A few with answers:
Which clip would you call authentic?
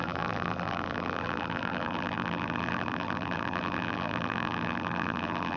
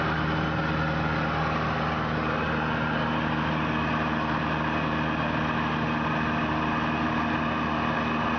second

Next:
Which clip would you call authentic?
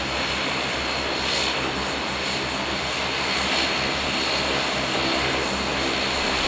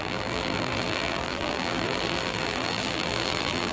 first